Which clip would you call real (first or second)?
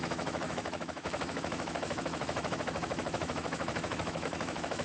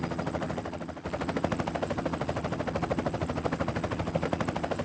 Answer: second